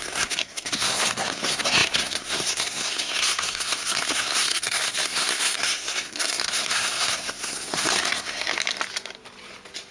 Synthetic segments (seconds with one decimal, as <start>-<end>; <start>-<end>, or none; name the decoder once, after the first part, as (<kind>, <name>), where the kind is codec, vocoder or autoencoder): 0.0-8.5 (codec, SNAC)